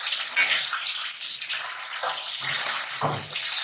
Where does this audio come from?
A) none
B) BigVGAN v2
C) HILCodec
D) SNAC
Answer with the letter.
A